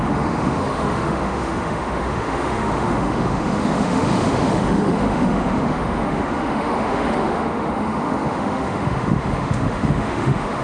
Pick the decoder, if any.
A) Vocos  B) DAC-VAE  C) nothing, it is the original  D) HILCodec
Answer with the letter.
B